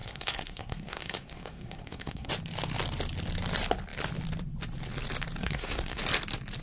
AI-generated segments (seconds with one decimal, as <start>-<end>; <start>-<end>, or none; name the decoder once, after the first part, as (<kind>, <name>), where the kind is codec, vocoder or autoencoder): 0.0-2.3 (codec, SNAC); 5.4-6.0